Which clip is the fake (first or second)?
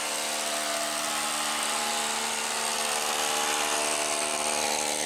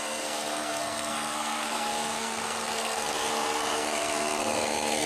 second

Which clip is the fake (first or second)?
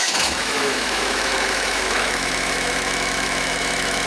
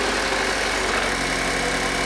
first